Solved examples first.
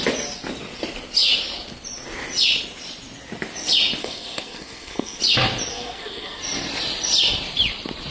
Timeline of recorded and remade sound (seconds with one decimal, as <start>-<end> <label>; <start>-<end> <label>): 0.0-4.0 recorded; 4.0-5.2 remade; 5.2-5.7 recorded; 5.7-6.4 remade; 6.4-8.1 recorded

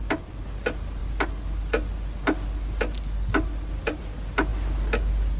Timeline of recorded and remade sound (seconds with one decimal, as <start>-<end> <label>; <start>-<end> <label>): 0.0-5.4 recorded

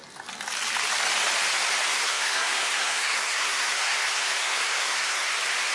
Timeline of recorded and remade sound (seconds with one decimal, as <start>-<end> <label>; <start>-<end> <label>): 0.0-1.9 recorded; 1.9-5.3 remade; 5.3-5.7 recorded